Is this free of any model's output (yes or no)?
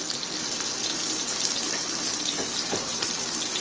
yes